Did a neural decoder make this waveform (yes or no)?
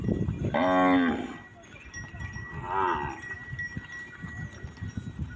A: no